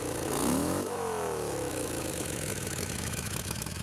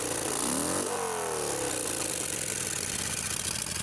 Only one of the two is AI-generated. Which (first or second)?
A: first